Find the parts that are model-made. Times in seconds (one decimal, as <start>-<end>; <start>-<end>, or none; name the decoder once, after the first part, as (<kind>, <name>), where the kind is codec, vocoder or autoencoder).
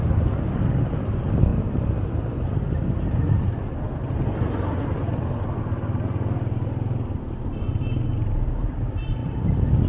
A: none